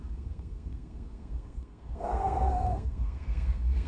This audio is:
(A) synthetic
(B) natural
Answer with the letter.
A